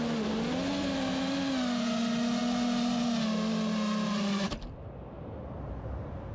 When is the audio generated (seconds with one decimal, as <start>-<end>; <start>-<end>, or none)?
none